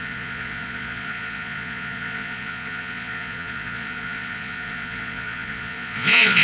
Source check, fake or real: fake